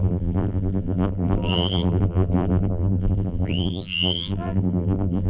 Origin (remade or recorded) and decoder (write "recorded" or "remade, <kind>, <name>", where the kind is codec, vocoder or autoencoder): remade, vocoder, BigVGAN v2